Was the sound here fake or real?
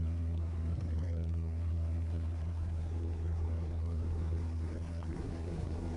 fake